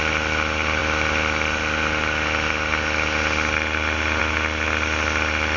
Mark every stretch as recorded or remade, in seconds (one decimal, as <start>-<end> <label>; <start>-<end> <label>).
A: 0.0-5.6 recorded